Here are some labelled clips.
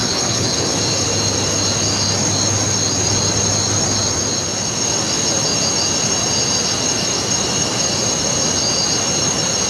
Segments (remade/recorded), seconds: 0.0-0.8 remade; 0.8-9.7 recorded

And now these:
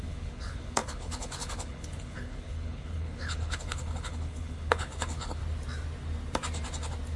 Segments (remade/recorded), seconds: 0.0-5.4 remade; 5.4-7.2 recorded

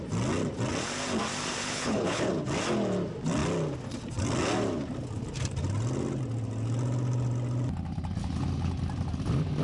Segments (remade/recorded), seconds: 0.0-1.6 recorded; 1.6-2.3 remade; 2.3-9.6 recorded

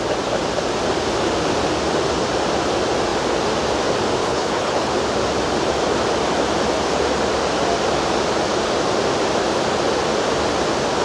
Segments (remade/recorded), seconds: 0.0-4.2 recorded; 4.2-4.9 remade; 4.9-11.0 recorded